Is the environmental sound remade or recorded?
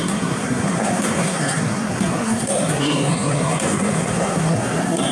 remade